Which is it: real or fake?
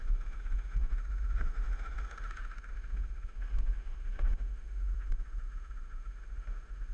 fake